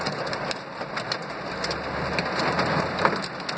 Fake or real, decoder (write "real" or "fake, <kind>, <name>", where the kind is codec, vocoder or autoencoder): real